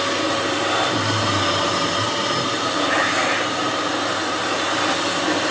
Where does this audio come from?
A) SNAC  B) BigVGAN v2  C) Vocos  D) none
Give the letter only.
B